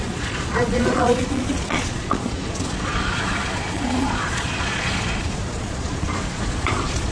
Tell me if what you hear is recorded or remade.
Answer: remade